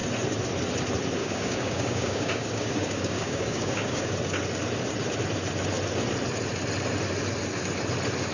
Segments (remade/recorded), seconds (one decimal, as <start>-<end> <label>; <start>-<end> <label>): 0.0-1.2 recorded; 1.2-4.1 remade; 4.1-8.3 recorded